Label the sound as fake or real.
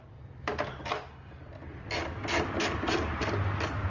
real